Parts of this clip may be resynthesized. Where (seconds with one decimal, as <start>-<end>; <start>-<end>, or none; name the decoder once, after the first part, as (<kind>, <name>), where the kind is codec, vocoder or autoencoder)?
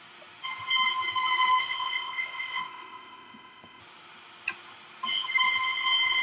1.6-3.8 (codec, ZipCodec)